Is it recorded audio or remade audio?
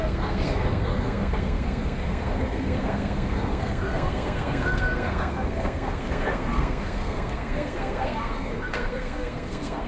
remade